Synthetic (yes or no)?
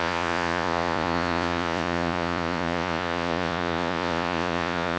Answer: yes